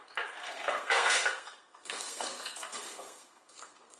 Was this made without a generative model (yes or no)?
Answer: no